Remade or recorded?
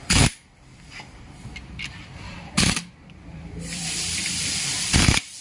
remade